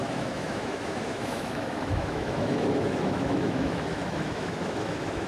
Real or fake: fake